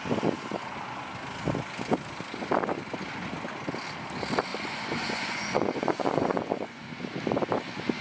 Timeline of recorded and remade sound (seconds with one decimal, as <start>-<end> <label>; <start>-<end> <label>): 0.0-4.5 recorded; 4.5-6.8 remade; 6.8-8.0 recorded